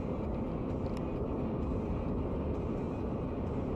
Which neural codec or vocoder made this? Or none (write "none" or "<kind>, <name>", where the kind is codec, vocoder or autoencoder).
none